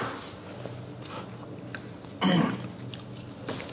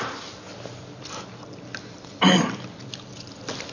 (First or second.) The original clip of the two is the first